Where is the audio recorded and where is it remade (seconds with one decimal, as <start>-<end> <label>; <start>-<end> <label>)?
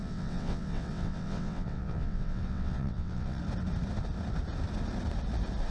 0.0-3.4 remade; 3.4-5.7 recorded